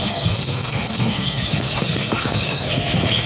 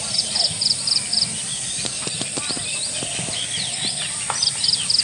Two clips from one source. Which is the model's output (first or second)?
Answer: first